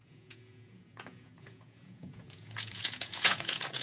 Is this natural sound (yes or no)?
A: no